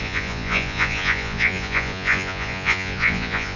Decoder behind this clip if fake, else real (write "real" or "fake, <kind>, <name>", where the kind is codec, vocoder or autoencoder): fake, vocoder, Vocos